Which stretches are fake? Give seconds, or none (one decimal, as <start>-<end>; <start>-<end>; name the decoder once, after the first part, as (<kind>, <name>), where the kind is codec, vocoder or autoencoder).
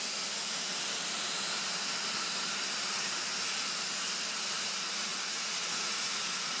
5.1-6.6 (vocoder, Vocos)